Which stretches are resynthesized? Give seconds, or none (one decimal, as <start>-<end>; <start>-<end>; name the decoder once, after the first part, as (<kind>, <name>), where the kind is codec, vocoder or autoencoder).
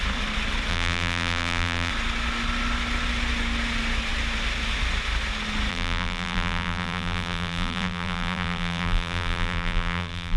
0.7-1.9 (vocoder, BigVGAN v2); 5.7-10.4